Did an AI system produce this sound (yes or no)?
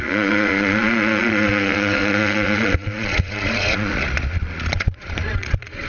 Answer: yes